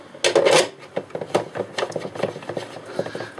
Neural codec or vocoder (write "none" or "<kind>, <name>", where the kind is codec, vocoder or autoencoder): none